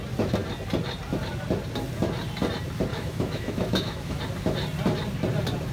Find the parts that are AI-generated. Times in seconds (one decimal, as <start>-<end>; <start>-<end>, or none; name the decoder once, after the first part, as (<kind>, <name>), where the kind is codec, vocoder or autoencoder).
2.9-4.2 (autoencoder, DAC-VAE)